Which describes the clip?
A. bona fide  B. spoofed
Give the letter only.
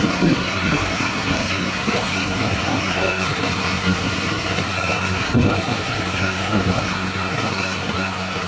B